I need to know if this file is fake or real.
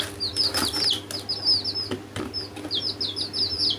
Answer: real